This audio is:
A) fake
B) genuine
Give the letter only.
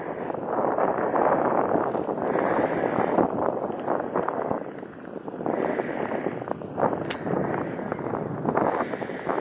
B